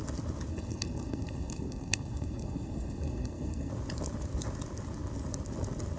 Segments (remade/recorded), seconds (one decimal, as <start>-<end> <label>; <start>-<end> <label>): 0.0-0.5 recorded; 0.5-3.7 remade; 3.7-6.0 recorded